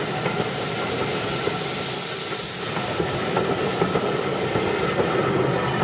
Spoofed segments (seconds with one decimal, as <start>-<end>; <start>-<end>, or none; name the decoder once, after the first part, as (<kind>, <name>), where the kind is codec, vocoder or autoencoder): none